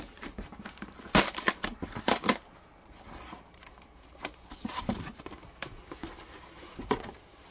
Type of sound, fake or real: fake